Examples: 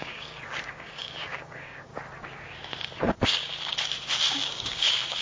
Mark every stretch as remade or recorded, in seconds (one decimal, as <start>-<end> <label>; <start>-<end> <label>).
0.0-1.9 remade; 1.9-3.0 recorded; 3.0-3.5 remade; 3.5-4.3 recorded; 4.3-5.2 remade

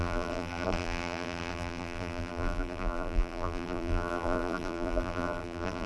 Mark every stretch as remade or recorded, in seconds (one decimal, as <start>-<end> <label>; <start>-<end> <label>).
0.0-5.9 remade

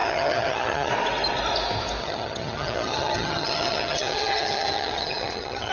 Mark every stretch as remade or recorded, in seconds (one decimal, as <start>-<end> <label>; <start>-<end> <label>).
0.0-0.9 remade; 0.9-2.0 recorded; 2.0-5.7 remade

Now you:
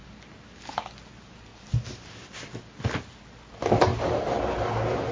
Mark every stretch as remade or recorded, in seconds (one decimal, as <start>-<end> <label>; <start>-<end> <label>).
0.0-5.1 recorded

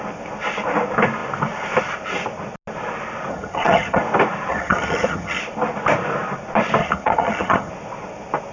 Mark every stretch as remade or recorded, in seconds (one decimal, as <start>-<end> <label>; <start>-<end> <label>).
0.0-3.3 recorded; 3.3-4.0 remade; 4.0-4.5 recorded; 4.5-5.4 remade; 5.4-6.8 recorded; 6.8-7.7 remade; 7.7-8.5 recorded

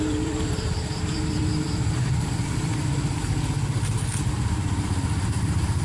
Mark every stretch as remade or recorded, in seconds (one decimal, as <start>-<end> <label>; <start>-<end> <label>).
0.0-2.7 remade; 2.7-4.2 recorded; 4.2-5.8 remade

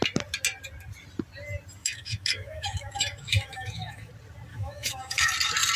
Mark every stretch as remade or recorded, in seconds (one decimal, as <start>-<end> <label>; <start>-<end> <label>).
0.0-1.8 recorded; 1.8-4.1 remade; 4.1-4.5 recorded; 4.5-5.3 remade; 5.3-5.8 recorded